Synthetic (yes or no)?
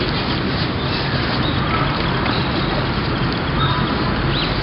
no